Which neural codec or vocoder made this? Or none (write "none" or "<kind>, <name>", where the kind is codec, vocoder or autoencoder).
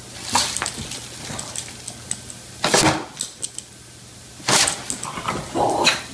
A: none